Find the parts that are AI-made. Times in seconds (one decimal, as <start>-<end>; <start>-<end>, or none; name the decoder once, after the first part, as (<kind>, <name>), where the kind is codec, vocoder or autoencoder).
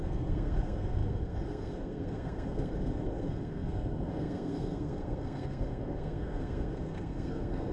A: 0.0-7.7 (codec, SNAC)